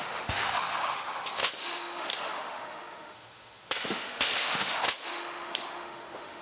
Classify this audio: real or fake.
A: fake